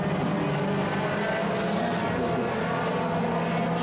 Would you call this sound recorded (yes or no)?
yes